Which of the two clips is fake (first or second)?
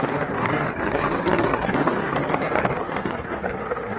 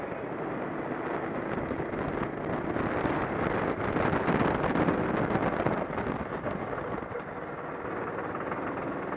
first